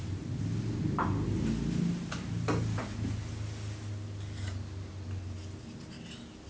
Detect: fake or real real